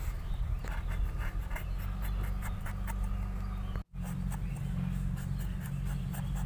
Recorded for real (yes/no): yes